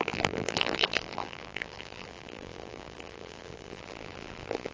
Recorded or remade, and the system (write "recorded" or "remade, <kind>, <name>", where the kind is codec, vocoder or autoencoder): remade, vocoder, BigVGAN v2